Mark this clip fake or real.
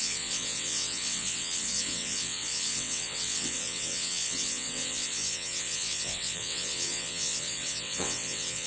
fake